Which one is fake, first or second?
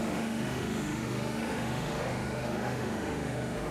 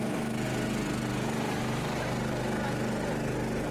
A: first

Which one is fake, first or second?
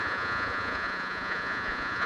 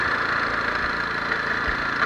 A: first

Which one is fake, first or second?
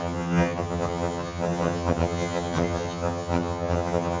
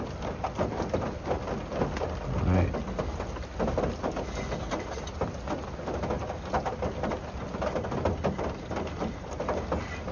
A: first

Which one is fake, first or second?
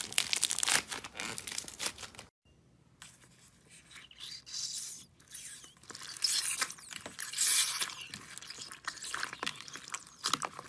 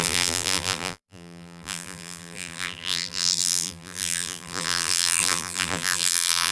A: second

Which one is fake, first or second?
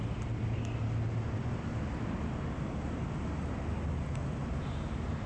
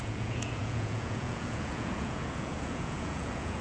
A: second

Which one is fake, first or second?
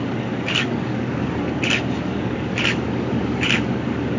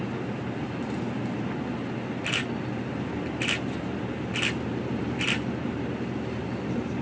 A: first